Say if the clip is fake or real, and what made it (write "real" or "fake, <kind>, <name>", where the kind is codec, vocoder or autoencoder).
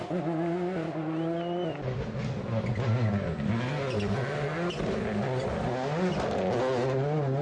real